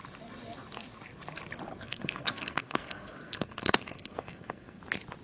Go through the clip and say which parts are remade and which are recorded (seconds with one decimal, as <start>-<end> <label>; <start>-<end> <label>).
0.0-1.7 recorded; 1.7-4.8 remade; 4.8-5.2 recorded